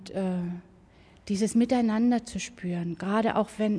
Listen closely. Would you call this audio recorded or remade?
recorded